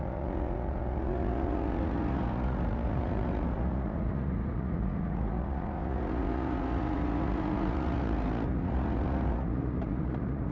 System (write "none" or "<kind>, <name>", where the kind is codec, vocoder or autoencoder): vocoder, Vocos